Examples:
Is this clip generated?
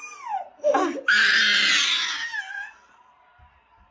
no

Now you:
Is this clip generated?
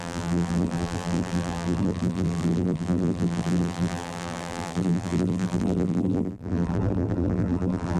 yes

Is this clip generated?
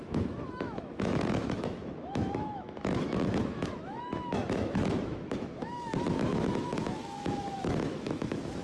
yes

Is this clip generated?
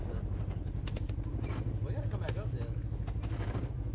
no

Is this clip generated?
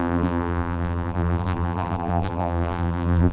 yes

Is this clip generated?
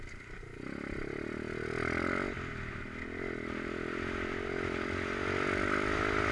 no